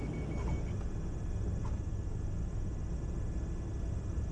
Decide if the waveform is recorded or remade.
recorded